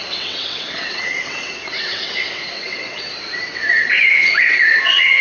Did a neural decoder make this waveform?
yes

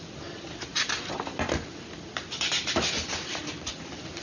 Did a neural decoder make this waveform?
no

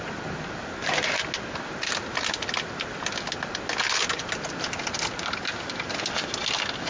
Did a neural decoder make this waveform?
no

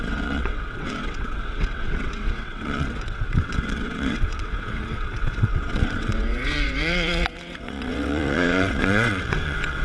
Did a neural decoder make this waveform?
yes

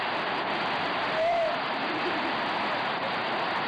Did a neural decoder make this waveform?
no